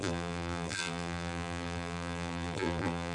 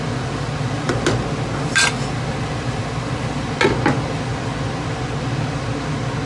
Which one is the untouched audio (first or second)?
second